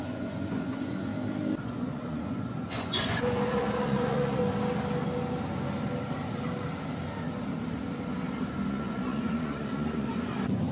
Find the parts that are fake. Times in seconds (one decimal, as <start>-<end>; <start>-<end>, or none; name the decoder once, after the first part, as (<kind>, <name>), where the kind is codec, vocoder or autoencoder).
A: 0.0-1.1 (vocoder, Vocos); 1.6-4.4; 8.7-10.7